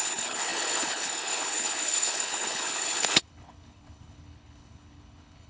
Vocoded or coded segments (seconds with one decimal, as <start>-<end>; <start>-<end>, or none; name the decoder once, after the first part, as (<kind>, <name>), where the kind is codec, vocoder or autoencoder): 0.0-5.5 (codec, HILCodec)